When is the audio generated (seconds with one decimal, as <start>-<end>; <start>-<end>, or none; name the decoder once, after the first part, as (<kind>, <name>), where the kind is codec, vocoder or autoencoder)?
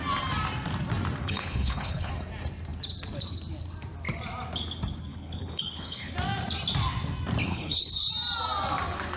1.2-2.1 (codec, HILCodec); 5.1-6.1; 7.5-8.1